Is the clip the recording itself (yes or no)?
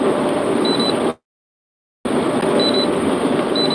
yes